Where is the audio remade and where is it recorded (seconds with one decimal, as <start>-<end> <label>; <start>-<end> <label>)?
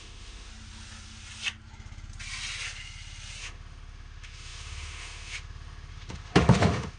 0.0-0.5 remade; 0.5-3.4 recorded; 3.4-7.0 remade